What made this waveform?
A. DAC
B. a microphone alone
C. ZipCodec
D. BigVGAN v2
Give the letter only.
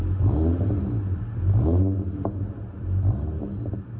B